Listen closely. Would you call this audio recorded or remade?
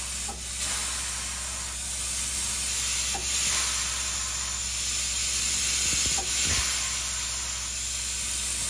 recorded